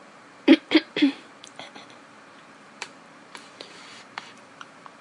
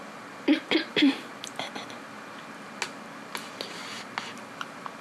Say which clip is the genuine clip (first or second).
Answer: second